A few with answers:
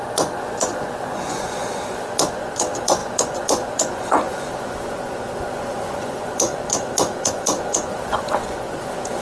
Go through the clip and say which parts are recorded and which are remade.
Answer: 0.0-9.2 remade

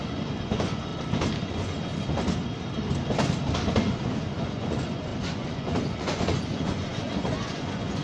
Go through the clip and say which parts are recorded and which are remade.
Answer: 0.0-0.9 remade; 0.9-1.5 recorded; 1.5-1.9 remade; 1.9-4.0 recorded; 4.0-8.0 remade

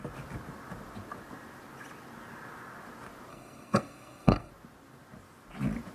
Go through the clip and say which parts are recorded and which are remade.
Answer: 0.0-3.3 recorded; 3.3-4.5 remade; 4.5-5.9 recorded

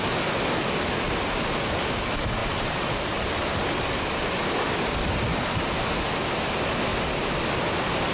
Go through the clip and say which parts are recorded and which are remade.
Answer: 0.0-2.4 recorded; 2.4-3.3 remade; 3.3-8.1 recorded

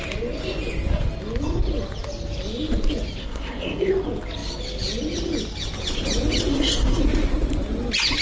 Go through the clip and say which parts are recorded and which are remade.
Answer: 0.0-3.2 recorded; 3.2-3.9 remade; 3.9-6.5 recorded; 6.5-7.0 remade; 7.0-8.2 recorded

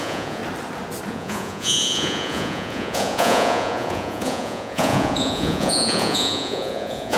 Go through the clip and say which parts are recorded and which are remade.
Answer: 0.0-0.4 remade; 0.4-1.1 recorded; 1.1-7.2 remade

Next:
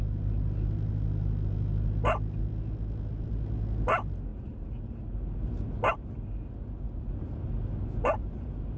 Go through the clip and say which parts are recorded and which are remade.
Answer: 0.0-8.8 recorded

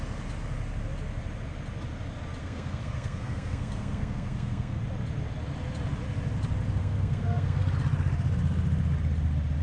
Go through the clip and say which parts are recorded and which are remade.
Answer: 0.0-2.4 recorded; 2.4-4.8 remade; 4.8-6.8 recorded; 6.8-7.6 remade; 7.6-9.6 recorded